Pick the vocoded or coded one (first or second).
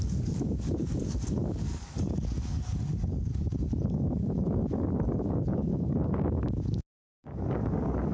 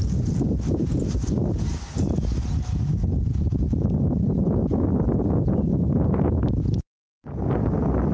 first